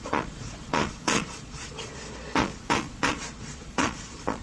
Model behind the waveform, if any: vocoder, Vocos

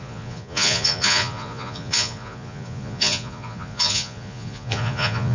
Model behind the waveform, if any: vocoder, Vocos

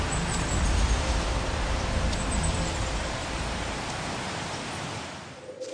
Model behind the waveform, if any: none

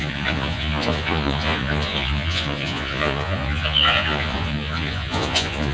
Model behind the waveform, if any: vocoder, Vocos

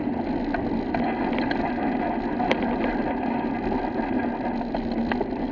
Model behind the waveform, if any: none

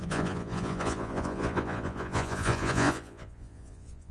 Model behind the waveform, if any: vocoder, Vocos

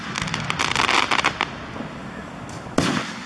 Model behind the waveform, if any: none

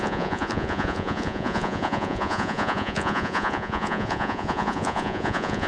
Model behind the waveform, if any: vocoder, Vocos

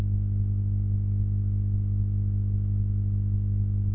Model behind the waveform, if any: none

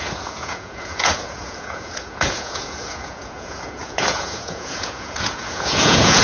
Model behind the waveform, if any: vocoder, Vocos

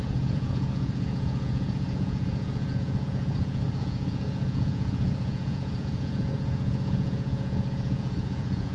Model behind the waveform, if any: vocoder, Vocos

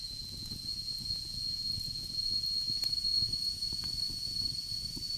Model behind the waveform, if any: vocoder, Vocos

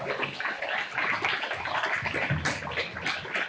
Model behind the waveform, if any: none